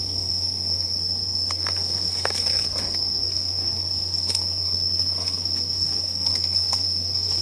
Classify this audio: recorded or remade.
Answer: remade